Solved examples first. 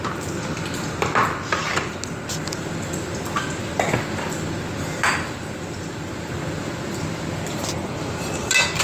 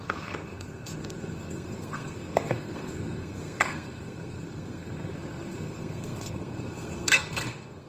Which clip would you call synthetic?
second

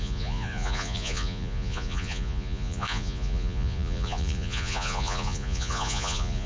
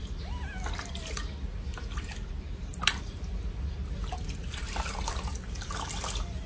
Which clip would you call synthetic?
first